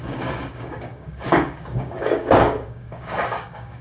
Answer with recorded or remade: remade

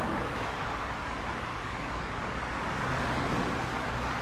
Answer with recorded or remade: remade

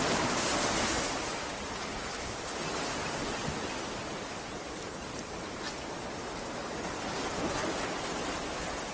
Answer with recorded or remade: recorded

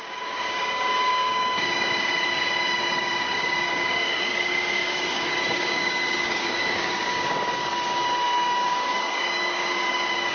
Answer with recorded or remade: remade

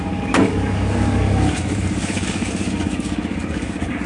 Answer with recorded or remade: remade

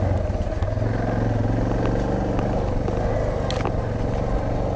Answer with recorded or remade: recorded